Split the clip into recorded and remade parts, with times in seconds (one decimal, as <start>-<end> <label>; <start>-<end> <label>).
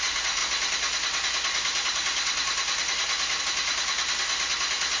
0.0-5.0 recorded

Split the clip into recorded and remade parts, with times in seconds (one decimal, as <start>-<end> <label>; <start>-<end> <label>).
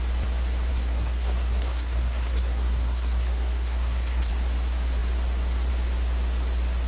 0.0-0.7 recorded; 0.7-4.3 remade; 4.3-6.9 recorded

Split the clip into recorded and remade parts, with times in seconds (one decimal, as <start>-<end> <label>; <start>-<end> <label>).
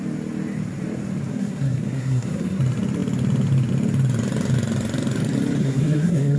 0.0-1.3 recorded; 1.3-2.6 remade; 2.6-5.6 recorded; 5.6-6.4 remade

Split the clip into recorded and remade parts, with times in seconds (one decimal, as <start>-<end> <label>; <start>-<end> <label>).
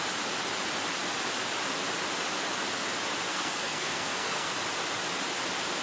0.0-3.3 recorded; 3.3-4.5 remade; 4.5-5.8 recorded